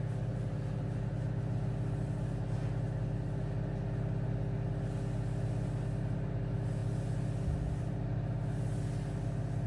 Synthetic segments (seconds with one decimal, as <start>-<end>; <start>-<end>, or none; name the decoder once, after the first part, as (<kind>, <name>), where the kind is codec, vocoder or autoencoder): none